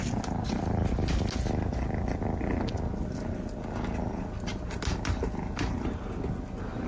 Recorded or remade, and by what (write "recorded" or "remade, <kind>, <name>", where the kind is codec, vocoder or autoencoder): recorded